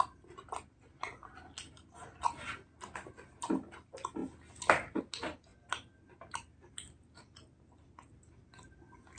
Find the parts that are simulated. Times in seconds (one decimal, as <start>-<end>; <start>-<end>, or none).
none